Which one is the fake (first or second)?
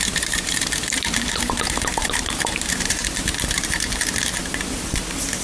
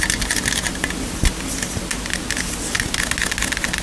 first